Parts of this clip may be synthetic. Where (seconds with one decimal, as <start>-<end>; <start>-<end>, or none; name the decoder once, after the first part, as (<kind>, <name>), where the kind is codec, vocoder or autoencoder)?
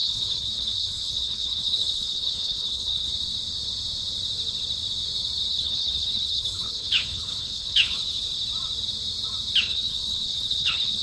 0.0-3.1 (codec, HILCodec); 5.5-8.0; 9.6-11.0